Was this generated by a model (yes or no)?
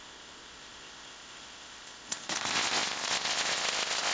yes